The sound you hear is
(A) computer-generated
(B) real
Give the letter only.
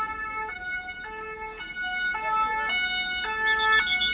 B